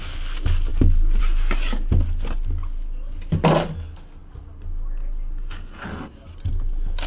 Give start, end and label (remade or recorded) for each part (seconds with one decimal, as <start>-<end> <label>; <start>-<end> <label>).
0.0-7.1 recorded